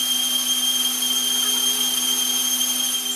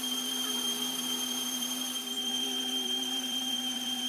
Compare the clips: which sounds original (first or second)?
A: first